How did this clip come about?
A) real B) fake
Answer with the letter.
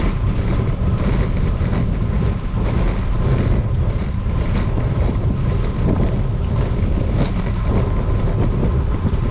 A